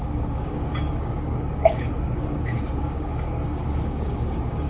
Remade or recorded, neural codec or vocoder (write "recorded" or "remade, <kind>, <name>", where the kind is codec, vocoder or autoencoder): remade, codec, DAC